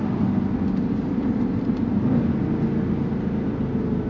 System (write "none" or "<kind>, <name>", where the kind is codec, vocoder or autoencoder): none